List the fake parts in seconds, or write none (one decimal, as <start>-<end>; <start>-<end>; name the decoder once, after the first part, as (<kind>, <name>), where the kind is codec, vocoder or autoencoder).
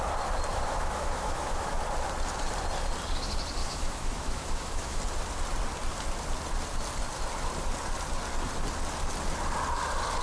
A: 0.5-1.7 (autoencoder, DAC-VAE); 3.6-5.0